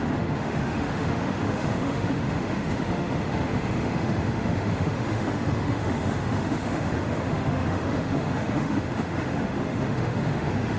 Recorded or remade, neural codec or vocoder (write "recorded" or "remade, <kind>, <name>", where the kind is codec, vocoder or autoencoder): remade, autoencoder, DAC-VAE